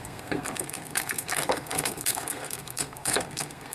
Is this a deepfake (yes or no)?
yes